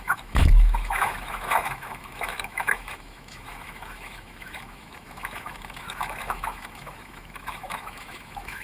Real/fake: fake